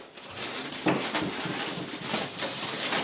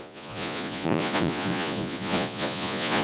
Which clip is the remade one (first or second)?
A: second